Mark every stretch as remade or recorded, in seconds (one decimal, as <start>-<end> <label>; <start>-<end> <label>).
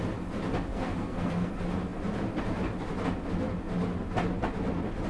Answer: 0.0-0.7 recorded; 0.7-1.5 remade; 1.5-5.1 recorded